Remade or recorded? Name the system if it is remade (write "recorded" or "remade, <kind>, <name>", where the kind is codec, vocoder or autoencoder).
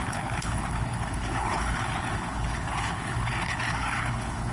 remade, codec, HILCodec